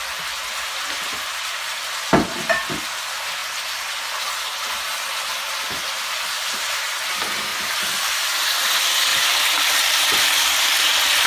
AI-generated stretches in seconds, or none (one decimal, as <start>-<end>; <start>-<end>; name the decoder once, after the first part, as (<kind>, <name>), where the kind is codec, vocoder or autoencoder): 7.5-8.2 (vocoder, BigVGAN v2); 9.1-10.8